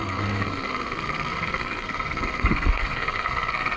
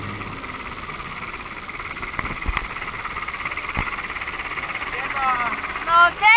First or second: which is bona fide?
second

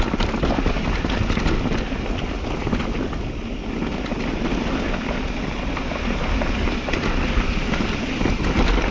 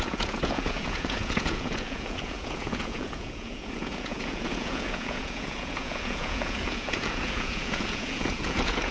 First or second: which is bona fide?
first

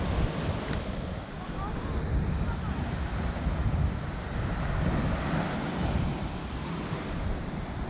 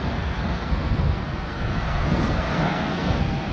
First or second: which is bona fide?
first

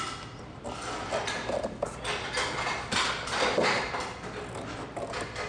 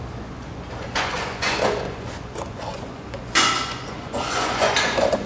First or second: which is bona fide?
first